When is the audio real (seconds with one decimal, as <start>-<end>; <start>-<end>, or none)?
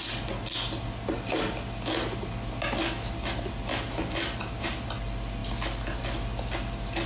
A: 0.0-7.1